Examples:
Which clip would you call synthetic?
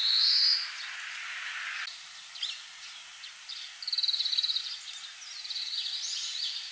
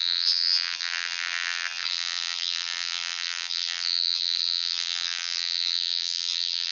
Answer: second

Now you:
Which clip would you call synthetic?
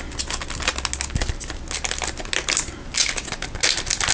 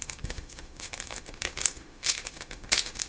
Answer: second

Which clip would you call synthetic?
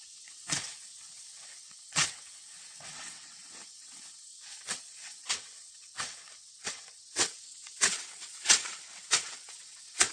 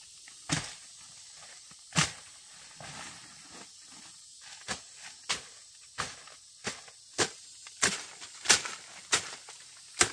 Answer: first